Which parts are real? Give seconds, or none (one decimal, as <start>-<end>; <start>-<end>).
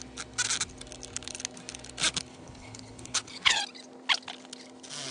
0.0-2.3; 3.6-5.1